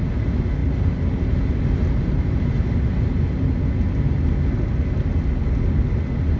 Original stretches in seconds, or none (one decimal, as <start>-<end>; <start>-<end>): 0.0-6.4